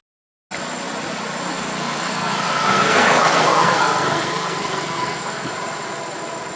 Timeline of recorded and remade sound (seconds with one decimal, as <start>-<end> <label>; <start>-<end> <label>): 0.0-1.5 recorded; 1.5-5.5 remade; 5.5-6.6 recorded